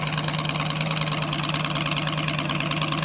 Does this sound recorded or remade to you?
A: recorded